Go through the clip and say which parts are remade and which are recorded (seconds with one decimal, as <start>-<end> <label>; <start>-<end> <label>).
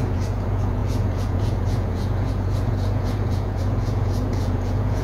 0.0-5.0 remade